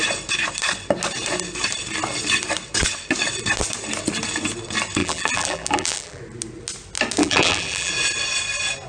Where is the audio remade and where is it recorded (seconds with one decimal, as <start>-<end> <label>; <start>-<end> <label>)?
0.0-5.0 recorded; 5.0-6.2 remade; 6.2-7.2 recorded; 7.2-7.9 remade; 7.9-8.9 recorded